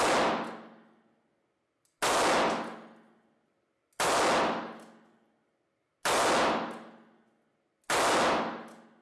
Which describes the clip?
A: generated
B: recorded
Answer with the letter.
B